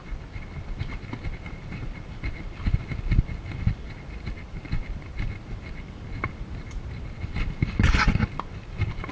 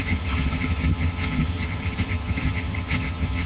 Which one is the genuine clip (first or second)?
first